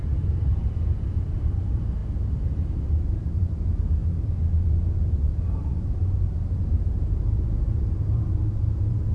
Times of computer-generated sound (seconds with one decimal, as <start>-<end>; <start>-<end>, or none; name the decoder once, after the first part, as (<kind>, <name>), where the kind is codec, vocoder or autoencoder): 0.0-9.1 (vocoder, BigVGAN v2)